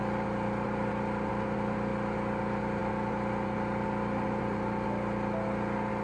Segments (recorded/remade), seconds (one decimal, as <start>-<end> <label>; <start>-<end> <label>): 0.0-6.0 recorded